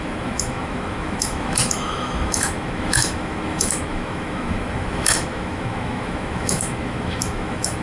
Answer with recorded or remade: remade